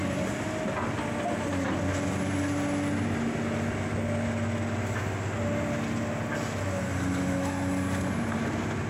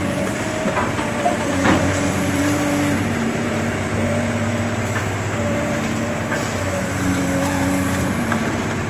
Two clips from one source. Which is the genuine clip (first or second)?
first